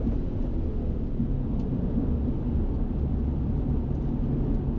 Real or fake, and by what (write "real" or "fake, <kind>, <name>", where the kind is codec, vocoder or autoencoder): real